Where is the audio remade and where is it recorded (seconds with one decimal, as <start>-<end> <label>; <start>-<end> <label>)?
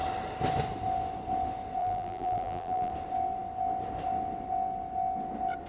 0.0-1.8 recorded; 1.8-2.9 remade; 2.9-5.7 recorded